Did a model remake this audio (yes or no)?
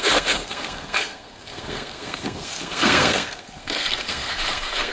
yes